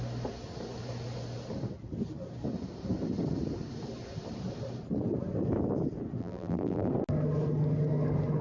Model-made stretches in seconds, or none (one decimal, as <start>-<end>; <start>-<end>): 6.2-6.9